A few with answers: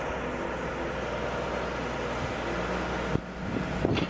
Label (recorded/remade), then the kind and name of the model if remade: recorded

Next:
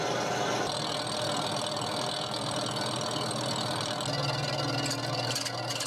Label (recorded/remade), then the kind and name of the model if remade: recorded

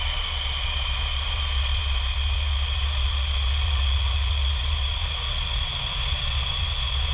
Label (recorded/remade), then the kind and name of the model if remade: remade, vocoder, Vocos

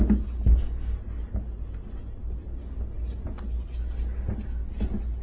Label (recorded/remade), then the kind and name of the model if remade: recorded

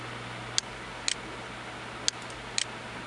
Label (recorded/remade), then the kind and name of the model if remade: recorded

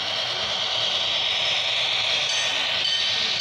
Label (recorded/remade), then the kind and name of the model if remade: recorded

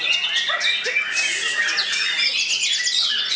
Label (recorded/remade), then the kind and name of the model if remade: recorded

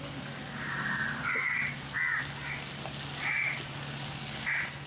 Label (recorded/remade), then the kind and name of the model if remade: recorded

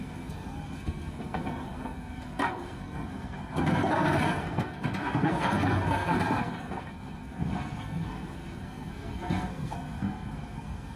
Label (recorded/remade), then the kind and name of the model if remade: remade, codec, SNAC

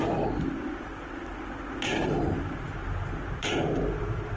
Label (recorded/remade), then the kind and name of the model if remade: recorded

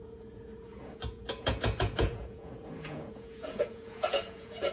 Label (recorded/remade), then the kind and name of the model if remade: remade, vocoder, Vocos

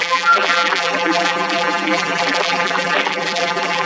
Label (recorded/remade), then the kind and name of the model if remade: remade, vocoder, BigVGAN v2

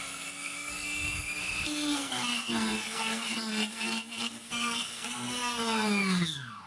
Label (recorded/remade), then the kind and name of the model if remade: remade, codec, SNAC